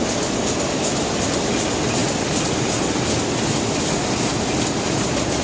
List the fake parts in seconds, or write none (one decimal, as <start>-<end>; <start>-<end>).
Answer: none